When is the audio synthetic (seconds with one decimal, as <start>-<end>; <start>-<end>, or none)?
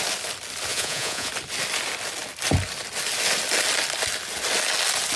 0.7-1.3